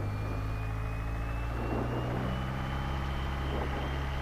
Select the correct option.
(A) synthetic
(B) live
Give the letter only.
B